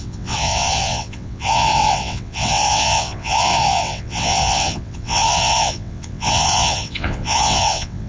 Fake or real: fake